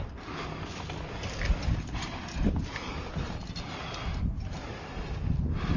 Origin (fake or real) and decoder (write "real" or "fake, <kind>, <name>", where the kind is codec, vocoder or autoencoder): real